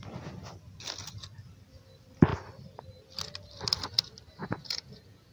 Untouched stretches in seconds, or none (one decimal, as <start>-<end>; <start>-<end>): 0.0-4.4

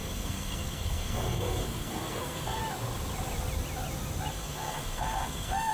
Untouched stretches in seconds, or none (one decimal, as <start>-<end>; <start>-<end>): 2.6-4.3

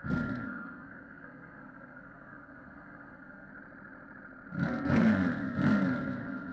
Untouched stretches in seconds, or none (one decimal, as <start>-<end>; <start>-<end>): 3.5-4.5

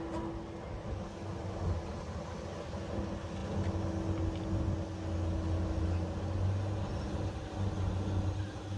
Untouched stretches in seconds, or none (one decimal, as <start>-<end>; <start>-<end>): 0.0-1.3; 2.2-8.8

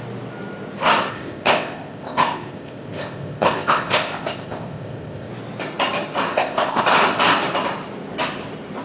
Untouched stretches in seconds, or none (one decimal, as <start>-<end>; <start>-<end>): 0.0-1.1; 5.3-6.3; 6.8-8.8